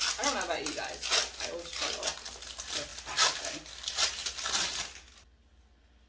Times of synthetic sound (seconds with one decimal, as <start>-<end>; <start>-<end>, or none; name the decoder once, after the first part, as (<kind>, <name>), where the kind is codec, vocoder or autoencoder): none

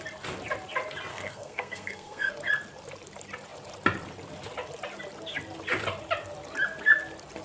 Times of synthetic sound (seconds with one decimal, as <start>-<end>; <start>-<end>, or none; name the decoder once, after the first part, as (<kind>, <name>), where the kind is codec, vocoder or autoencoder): 1.1-2.3 (codec, SNAC)

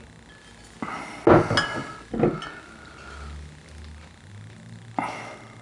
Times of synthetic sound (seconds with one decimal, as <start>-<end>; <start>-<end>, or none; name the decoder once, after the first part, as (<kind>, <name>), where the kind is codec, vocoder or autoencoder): none

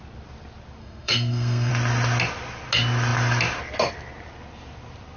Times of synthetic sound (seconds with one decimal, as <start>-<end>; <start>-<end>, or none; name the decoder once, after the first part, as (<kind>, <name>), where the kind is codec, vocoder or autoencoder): 0.8-1.7 (codec, SNAC)

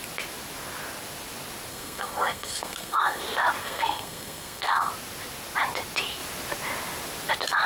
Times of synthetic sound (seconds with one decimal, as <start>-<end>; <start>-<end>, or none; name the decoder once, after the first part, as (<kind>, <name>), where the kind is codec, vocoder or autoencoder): 1.7-3.2 (codec, SNAC); 3.6-4.9

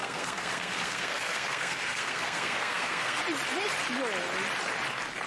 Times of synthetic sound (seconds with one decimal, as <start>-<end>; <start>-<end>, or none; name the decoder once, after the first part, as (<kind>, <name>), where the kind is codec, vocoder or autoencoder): 0.0-3.2 (codec, SNAC)

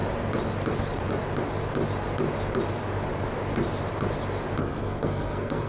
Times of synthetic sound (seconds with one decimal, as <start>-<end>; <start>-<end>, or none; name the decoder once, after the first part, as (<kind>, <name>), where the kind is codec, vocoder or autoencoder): 4.6-5.7 (codec, SNAC)

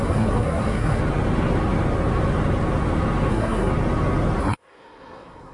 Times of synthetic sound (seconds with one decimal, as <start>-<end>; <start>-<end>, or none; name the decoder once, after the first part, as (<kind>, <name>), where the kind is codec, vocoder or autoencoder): 0.0-1.0 (codec, SNAC); 3.3-3.7; 4.4-5.5